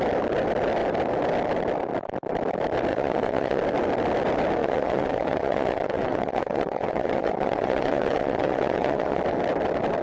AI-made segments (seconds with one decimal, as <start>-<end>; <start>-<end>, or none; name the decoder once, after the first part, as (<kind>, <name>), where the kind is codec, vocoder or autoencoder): 2.9-3.6 (vocoder, WaveNeXt); 4.6-9.2